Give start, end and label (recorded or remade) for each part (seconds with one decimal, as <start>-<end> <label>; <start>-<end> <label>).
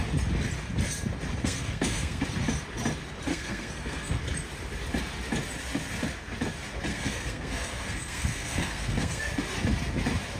0.0-1.4 recorded; 1.4-2.2 remade; 2.2-3.3 recorded; 3.3-4.2 remade; 4.2-6.9 recorded; 6.9-9.2 remade; 9.2-10.4 recorded